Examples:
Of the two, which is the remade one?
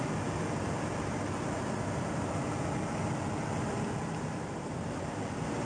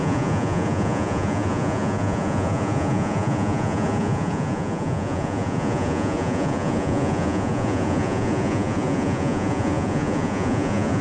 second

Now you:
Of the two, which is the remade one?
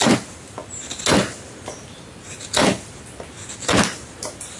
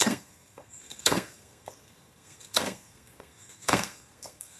second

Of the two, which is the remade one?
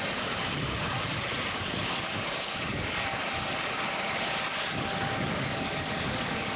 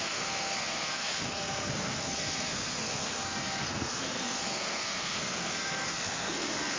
second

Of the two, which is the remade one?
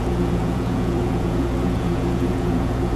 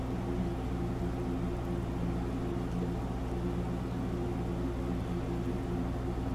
first